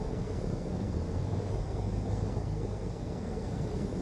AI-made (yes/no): yes